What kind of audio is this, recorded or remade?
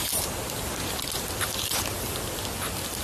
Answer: recorded